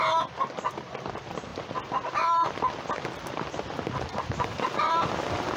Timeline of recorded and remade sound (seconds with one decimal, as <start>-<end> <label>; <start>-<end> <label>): 0.0-5.6 recorded